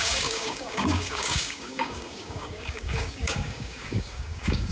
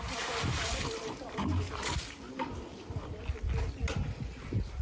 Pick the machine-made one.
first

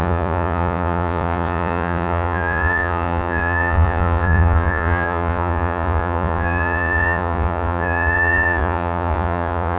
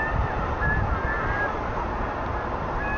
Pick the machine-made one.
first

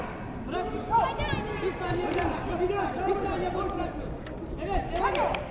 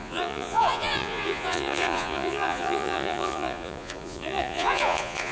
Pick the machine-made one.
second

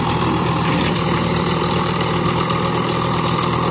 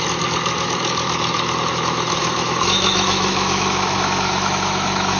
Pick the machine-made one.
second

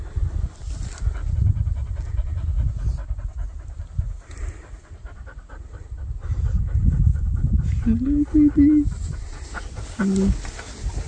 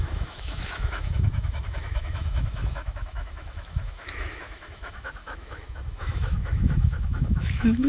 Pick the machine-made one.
second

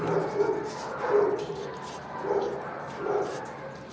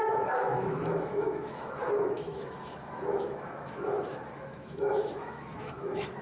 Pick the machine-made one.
second